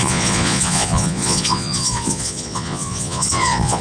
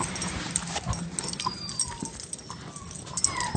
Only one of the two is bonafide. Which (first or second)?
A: second